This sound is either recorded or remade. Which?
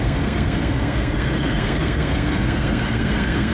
remade